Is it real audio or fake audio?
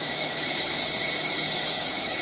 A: fake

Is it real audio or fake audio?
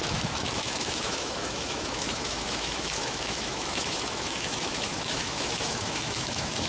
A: fake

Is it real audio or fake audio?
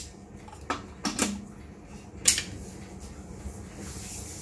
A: real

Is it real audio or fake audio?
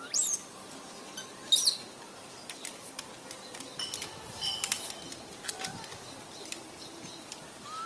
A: real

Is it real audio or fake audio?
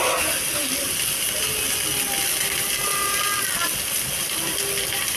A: real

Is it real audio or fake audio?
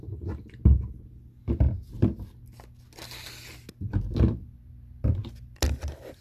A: real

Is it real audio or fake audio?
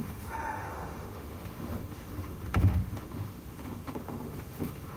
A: fake